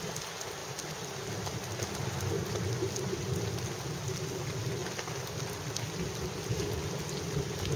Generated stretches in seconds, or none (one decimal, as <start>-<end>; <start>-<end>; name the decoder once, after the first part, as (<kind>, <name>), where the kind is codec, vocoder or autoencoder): none